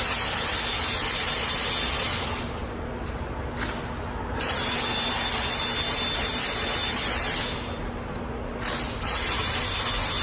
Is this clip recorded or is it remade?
recorded